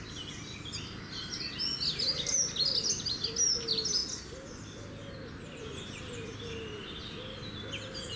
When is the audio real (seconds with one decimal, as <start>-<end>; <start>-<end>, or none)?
0.0-8.2